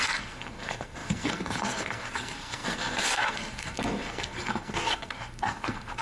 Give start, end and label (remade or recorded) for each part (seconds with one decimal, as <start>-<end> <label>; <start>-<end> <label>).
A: 0.0-6.0 remade